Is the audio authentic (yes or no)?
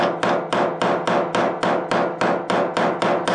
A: yes